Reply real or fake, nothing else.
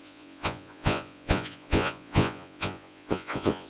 fake